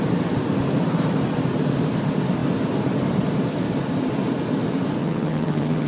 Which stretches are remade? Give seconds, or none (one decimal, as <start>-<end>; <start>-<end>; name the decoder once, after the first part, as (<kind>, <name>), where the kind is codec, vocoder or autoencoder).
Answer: 5.0-5.9 (vocoder, HiFi-GAN)